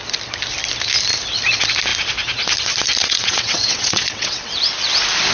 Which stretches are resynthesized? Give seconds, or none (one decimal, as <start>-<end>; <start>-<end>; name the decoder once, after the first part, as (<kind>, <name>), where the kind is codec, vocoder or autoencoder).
3.0-4.6 (vocoder, WaveNeXt)